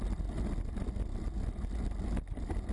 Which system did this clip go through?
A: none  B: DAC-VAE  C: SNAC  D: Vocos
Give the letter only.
A